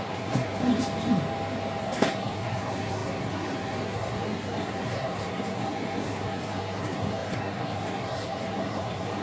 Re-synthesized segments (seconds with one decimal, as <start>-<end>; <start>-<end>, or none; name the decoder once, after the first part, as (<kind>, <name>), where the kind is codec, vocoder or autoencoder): 0.0-0.7 (codec, SNAC); 1.8-9.2